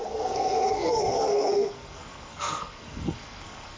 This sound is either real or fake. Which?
fake